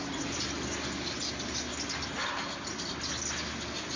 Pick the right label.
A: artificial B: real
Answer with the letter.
B